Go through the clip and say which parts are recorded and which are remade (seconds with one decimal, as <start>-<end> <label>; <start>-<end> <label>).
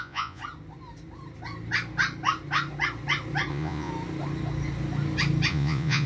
0.0-0.4 remade; 0.4-3.5 recorded; 3.5-3.9 remade; 3.9-5.5 recorded; 5.5-6.1 remade